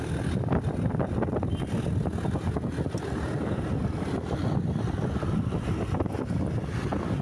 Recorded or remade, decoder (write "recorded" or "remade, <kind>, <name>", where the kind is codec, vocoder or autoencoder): recorded